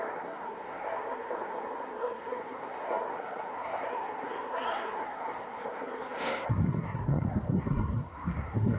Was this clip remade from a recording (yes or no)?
yes